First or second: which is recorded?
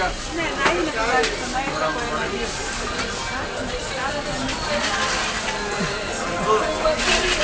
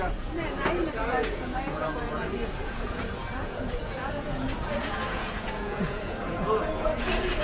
first